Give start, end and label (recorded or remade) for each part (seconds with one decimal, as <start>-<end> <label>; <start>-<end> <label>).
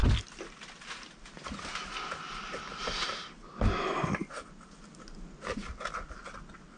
0.0-6.8 recorded